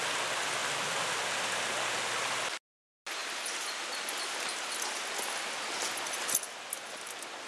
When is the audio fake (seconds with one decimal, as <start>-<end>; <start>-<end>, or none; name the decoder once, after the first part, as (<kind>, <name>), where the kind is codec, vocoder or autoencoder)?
none